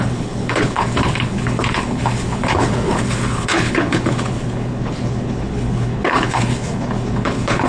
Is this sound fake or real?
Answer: fake